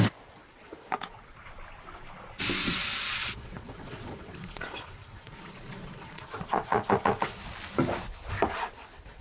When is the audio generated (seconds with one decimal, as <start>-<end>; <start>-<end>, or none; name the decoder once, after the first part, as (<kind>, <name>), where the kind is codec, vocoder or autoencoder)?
0.5-1.3 (vocoder, Vocos); 2.6-7.4